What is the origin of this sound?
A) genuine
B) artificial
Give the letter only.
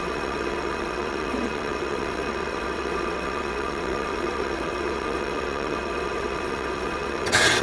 B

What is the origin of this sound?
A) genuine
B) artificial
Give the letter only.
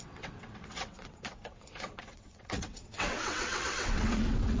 B